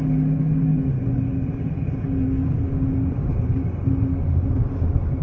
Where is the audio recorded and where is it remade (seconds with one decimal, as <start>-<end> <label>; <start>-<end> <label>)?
0.0-5.2 recorded